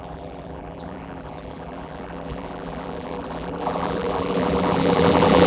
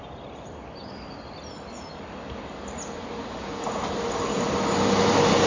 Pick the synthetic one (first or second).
first